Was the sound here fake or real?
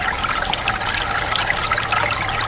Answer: real